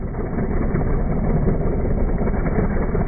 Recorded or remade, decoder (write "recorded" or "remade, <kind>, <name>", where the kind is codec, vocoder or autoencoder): recorded